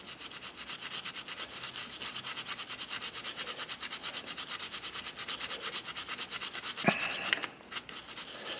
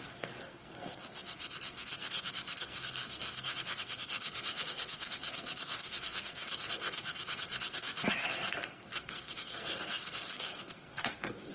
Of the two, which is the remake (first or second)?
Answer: second